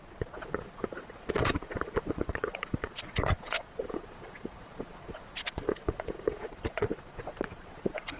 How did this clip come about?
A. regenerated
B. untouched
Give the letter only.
A